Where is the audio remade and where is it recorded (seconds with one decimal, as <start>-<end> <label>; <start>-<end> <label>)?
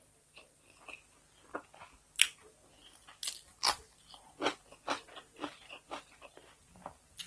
0.0-7.3 recorded